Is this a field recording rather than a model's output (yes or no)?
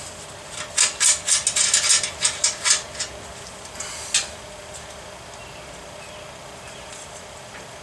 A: yes